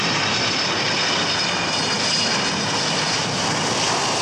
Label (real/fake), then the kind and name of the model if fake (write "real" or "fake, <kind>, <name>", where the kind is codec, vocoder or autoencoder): real